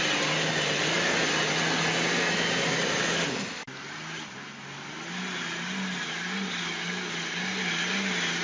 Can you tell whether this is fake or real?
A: real